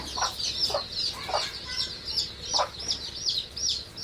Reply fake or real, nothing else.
real